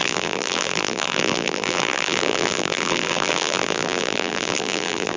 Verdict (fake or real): fake